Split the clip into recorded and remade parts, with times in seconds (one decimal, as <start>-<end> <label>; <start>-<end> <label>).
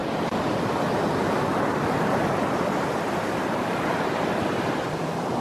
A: 0.0-3.2 recorded; 3.2-5.4 remade